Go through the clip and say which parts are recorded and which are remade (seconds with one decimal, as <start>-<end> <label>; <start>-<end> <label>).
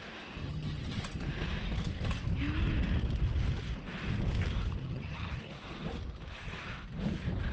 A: 0.0-0.4 recorded; 0.4-1.0 remade; 1.0-4.8 recorded; 4.8-5.4 remade; 5.4-7.5 recorded